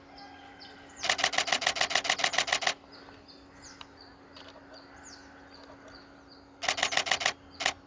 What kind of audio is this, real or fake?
real